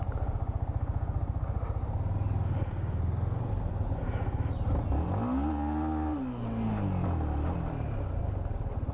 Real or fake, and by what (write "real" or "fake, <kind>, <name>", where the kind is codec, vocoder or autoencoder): real